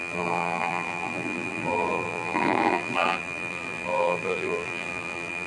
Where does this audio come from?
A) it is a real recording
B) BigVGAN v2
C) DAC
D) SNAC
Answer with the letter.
B